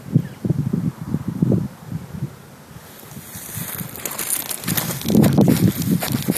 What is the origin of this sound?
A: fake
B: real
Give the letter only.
B